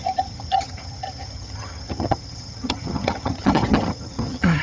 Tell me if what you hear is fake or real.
fake